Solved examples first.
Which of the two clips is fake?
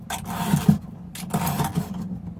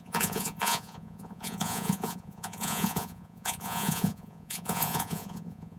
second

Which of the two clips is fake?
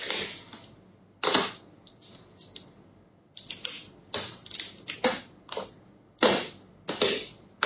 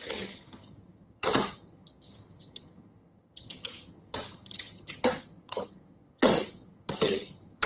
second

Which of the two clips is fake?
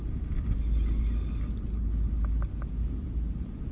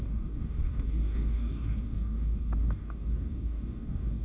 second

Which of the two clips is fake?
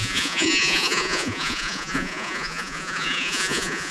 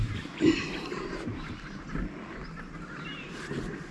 first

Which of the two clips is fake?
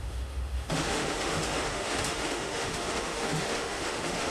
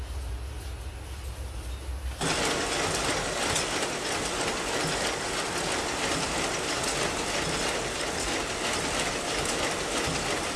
first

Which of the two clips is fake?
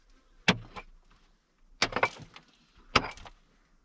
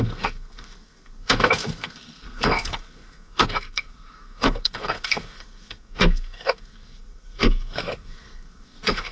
second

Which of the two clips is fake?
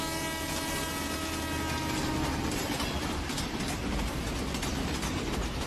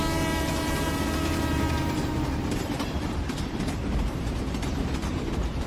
second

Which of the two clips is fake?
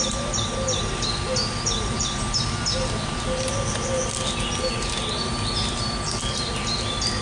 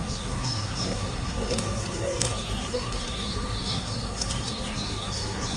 second